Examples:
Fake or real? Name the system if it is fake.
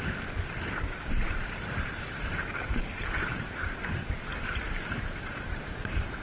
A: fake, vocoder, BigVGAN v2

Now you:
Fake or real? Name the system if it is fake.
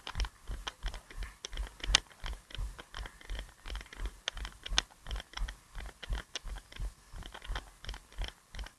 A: real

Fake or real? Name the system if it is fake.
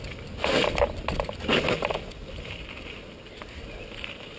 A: real